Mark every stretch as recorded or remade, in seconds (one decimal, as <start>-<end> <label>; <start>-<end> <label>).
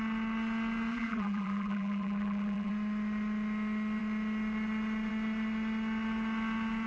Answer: 0.0-0.9 recorded; 0.9-2.7 remade; 2.7-6.9 recorded